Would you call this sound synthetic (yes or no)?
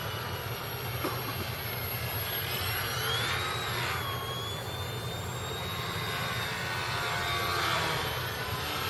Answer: no